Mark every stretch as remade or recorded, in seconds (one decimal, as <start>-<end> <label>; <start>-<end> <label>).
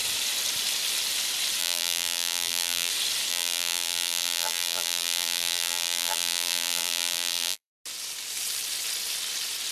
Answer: 0.0-1.6 recorded; 1.6-2.9 remade; 2.9-3.3 recorded; 3.3-7.7 remade; 7.7-9.7 recorded